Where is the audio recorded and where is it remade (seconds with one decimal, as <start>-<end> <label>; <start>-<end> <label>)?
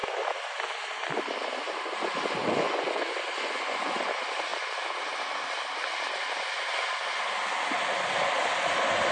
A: 0.0-2.4 recorded; 2.4-4.1 remade; 4.1-9.1 recorded